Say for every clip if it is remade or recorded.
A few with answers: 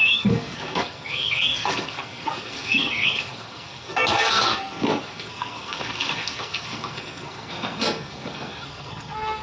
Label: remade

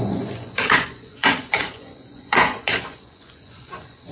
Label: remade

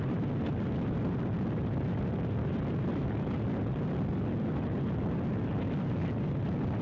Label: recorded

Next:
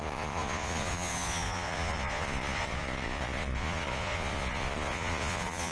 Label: remade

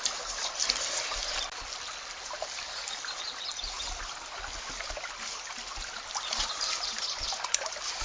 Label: recorded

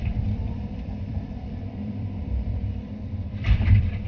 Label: remade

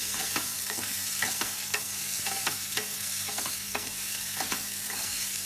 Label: remade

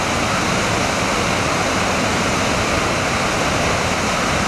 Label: recorded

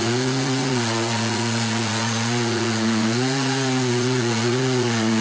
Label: remade